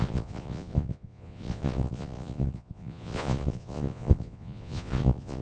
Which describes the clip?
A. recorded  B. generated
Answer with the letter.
B